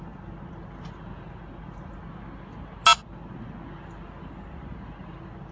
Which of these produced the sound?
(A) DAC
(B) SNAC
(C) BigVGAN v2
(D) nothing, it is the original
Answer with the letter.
D